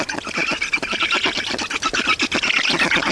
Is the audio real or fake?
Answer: real